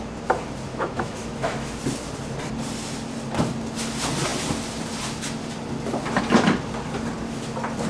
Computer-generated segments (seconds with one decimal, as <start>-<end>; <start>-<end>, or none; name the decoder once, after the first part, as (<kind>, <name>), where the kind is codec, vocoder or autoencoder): 0.7-1.8 (autoencoder, DAC-VAE)

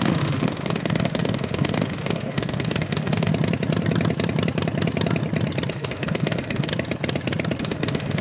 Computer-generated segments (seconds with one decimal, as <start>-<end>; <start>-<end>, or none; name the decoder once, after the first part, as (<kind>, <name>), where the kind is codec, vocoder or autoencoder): 0.0-3.3 (autoencoder, DAC-VAE); 5.7-6.7; 7.6-8.2

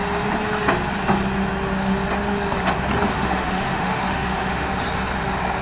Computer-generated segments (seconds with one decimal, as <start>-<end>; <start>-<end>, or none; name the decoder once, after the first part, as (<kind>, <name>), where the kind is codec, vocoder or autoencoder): 3.1-4.7 (autoencoder, DAC-VAE)

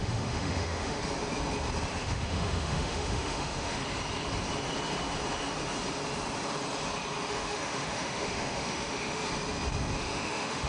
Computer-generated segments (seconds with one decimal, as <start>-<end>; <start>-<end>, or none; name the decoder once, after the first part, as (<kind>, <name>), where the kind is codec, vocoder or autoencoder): 0.0-1.0 (autoencoder, DAC-VAE); 2.0-3.8; 7.3-9.2; 10.0-10.7

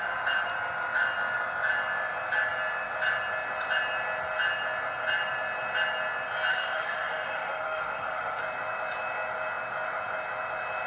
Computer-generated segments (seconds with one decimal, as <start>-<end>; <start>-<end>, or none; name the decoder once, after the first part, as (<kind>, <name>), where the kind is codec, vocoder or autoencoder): 6.5-8.4 (autoencoder, DAC-VAE)

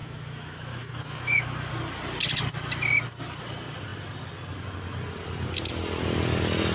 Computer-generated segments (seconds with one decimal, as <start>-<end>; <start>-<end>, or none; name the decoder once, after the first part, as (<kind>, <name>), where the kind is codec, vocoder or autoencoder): 0.0-1.7 (autoencoder, DAC-VAE)

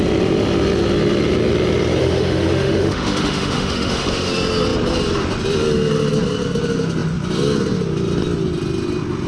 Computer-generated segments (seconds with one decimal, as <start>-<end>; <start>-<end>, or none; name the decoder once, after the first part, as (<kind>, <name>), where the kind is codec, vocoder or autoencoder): 2.0-4.3 (autoencoder, DAC-VAE)

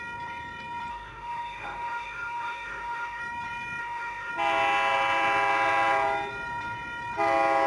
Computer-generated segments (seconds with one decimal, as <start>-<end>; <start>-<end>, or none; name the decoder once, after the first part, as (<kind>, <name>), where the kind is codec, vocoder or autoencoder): 0.9-3.2 (autoencoder, DAC-VAE); 3.8-4.3